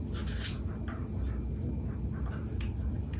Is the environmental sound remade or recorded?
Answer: recorded